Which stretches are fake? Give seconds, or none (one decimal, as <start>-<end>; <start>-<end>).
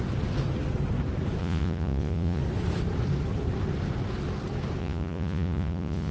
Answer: 1.4-2.4; 4.8-6.1